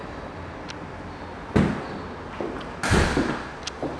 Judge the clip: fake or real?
real